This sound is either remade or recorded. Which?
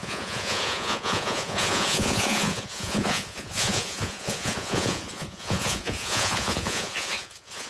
remade